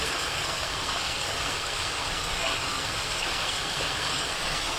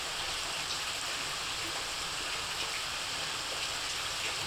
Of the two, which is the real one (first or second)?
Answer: second